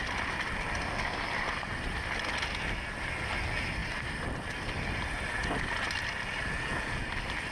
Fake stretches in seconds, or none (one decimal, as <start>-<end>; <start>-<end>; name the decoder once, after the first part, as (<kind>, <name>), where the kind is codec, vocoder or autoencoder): none